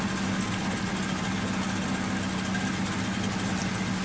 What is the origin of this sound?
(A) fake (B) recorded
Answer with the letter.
B